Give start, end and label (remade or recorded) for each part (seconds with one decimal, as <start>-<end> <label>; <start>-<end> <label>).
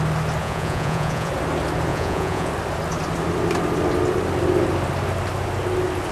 0.0-0.4 recorded; 0.4-1.3 remade; 1.3-1.9 recorded; 1.9-2.5 remade; 2.5-6.1 recorded